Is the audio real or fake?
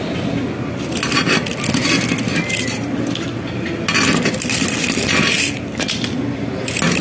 real